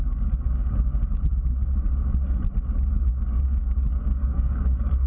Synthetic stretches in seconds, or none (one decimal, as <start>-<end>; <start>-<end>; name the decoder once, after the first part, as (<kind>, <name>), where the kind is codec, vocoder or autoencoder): 0.0-0.9 (codec, DAC); 2.9-5.1